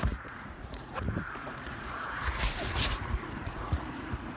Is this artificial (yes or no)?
yes